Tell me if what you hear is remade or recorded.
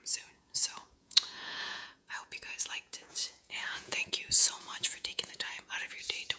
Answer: remade